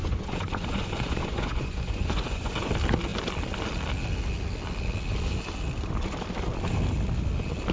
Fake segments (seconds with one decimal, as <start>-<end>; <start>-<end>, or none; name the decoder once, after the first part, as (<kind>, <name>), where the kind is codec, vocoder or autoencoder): 0.0-2.7 (vocoder, Vocos)